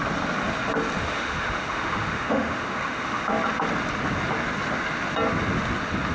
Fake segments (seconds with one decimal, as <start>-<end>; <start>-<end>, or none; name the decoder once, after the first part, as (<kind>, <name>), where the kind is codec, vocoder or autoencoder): 1.0-3.3 (autoencoder, DAC-VAE)